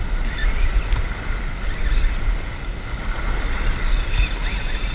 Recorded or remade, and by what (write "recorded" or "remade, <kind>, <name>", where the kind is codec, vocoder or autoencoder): recorded